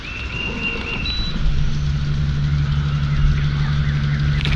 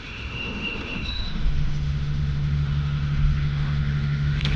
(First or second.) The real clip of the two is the first